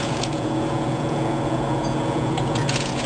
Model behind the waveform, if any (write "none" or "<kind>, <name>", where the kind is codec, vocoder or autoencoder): vocoder, Vocos